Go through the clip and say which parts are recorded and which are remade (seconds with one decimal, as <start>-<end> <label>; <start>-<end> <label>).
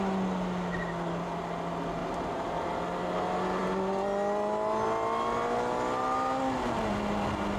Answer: 0.0-2.0 recorded; 2.0-2.7 remade; 2.7-7.6 recorded